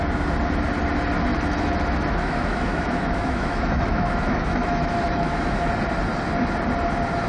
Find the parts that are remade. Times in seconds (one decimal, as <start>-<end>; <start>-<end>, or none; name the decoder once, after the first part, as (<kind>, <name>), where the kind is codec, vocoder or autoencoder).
1.3-5.7 (autoencoder, DAC-VAE)